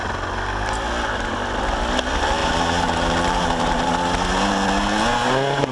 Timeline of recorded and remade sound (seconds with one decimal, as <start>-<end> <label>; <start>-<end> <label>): 0.0-2.4 recorded; 2.4-3.9 remade; 3.9-5.7 recorded